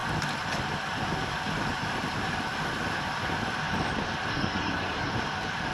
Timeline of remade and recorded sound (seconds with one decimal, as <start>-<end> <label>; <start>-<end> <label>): 0.0-4.3 recorded; 4.3-5.1 remade; 5.1-5.7 recorded